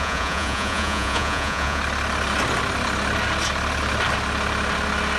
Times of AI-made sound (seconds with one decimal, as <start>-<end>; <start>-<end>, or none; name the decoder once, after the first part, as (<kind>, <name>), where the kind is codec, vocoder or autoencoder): 0.0-1.8 (vocoder, Vocos)